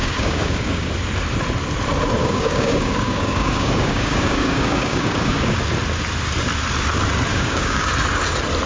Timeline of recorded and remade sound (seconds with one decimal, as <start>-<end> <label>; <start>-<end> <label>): 0.0-0.9 remade; 0.9-2.2 recorded; 2.2-5.6 remade; 5.6-7.3 recorded; 7.3-7.9 remade; 7.9-8.7 recorded